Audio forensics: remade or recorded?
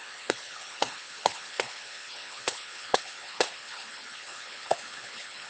remade